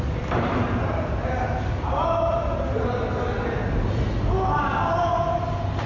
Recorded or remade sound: recorded